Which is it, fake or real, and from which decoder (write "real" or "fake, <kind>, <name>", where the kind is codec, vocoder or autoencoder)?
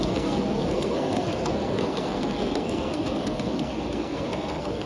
fake, codec, SNAC